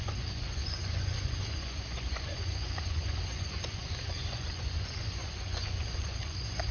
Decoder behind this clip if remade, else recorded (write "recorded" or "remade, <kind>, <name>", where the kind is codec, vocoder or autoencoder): remade, vocoder, Vocos